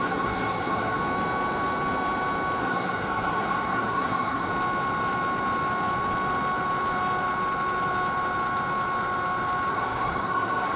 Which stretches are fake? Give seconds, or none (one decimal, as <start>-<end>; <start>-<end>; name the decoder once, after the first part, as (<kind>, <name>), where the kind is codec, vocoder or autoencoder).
0.0-1.0 (codec, SNAC); 2.6-4.5; 9.7-10.8

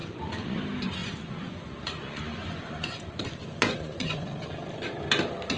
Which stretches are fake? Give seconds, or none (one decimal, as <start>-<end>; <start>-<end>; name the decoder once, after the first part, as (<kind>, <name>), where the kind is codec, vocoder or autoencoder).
0.0-0.6 (vocoder, Vocos); 1.0-4.4

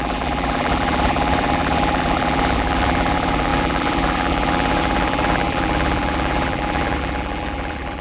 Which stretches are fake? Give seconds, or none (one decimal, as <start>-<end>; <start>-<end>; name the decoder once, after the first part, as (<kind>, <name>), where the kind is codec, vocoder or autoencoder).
0.0-8.0 (vocoder, BigVGAN v2)